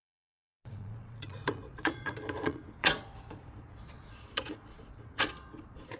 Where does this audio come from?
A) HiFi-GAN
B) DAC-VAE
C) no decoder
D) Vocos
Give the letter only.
D